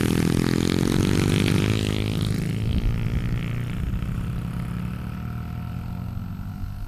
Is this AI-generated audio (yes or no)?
no